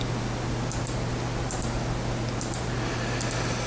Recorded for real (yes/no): yes